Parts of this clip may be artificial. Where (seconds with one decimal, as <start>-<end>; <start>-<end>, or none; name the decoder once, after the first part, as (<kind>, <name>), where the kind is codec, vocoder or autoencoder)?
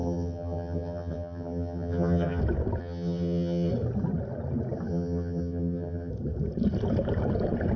0.0-2.4 (vocoder, HiFi-GAN); 2.8-3.7; 4.9-6.1